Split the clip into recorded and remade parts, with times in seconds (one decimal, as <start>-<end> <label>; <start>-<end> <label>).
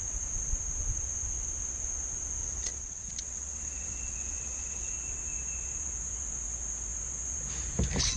0.0-2.4 recorded; 2.4-4.9 remade; 4.9-8.2 recorded